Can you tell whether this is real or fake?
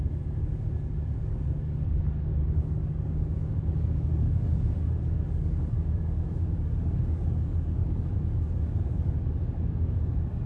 fake